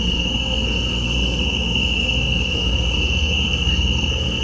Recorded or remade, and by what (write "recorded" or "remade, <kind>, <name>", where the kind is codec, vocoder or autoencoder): remade, codec, SNAC